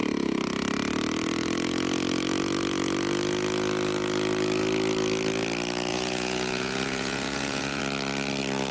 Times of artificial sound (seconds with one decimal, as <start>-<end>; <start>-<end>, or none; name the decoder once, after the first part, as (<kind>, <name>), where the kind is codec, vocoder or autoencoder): 5.9-7.8 (vocoder, Vocos)

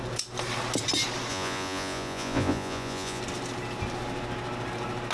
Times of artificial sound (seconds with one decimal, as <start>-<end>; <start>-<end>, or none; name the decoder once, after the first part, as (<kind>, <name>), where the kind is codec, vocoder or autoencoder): 1.3-3.2 (vocoder, Vocos)